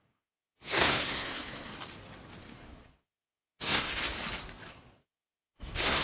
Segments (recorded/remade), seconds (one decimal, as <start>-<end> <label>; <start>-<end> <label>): 0.0-1.7 remade; 1.7-2.4 recorded; 2.4-4.0 remade; 4.0-4.7 recorded; 4.7-6.0 remade